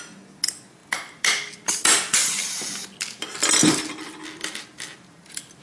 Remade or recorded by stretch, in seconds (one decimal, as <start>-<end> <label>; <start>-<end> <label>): 0.0-5.6 recorded